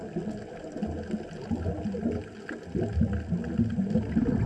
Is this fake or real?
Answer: real